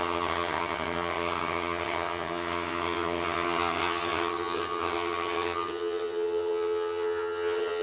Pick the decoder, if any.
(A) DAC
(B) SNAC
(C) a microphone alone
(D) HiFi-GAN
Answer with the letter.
D